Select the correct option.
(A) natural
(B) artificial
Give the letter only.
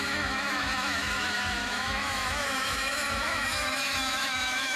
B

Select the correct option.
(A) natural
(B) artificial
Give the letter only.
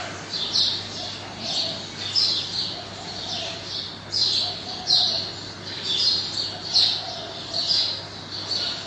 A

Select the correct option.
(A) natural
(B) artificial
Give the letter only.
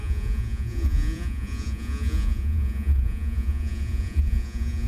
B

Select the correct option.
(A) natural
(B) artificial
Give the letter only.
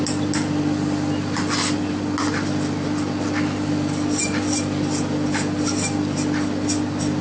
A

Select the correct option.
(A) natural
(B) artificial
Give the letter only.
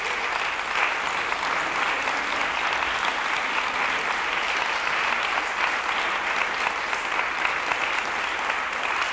A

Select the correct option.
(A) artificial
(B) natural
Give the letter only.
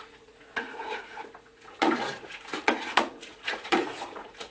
A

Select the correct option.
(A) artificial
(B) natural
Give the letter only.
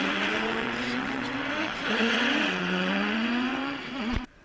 A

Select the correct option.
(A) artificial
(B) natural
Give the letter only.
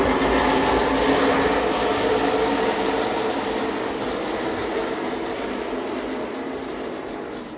B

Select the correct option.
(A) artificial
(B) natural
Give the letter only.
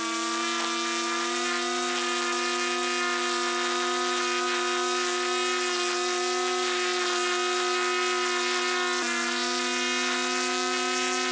B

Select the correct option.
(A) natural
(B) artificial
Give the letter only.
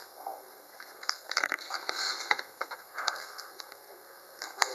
B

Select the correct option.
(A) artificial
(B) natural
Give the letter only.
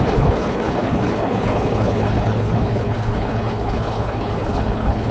A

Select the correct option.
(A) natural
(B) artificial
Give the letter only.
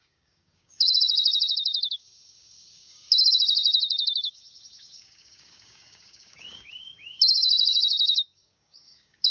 B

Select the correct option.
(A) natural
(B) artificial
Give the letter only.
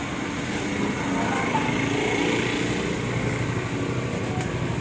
A